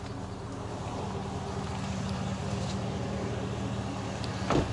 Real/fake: real